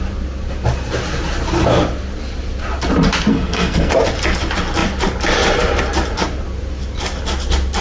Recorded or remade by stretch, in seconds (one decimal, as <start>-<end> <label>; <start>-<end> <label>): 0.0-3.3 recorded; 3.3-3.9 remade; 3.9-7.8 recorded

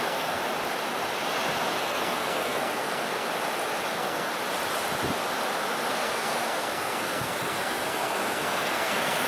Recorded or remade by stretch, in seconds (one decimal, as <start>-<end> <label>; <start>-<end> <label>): 0.0-0.4 remade; 0.4-1.8 recorded; 1.8-3.3 remade; 3.3-3.9 recorded; 3.9-4.3 remade; 4.3-5.9 recorded; 5.9-9.3 remade

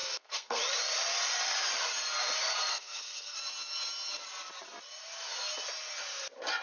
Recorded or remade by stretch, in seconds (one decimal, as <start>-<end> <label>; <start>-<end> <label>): 0.0-0.6 remade; 0.6-2.7 recorded; 2.7-3.4 remade; 3.4-6.6 recorded